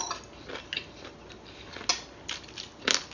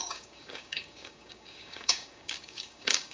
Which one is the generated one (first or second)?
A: second